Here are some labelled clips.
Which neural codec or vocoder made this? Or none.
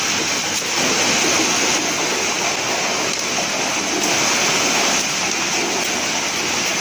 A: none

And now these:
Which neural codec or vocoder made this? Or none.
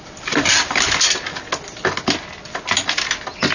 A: none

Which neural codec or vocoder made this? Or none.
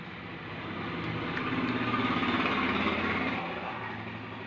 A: none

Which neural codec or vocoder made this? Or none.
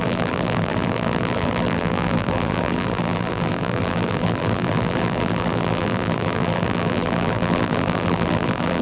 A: vocoder, BigVGAN v2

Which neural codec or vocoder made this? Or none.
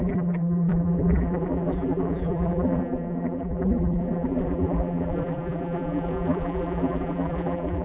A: vocoder, BigVGAN v2